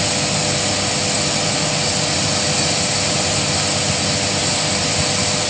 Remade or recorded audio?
recorded